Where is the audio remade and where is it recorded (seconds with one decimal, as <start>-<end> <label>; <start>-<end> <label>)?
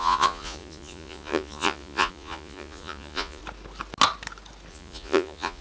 0.0-3.4 remade; 3.4-4.7 recorded; 4.7-5.6 remade